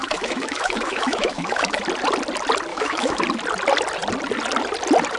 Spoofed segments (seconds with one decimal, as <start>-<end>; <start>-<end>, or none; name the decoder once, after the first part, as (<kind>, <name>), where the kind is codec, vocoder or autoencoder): 0.0-1.8 (autoencoder, DAC-VAE); 2.7-3.2